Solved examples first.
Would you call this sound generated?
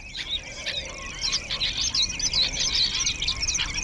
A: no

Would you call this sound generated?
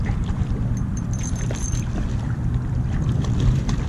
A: yes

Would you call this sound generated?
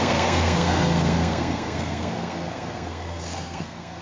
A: yes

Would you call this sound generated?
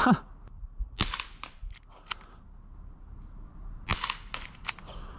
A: no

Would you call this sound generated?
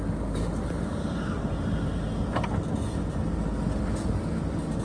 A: no